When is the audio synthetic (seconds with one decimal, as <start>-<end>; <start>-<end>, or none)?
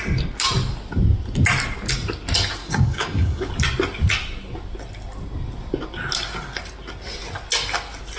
2.6-3.5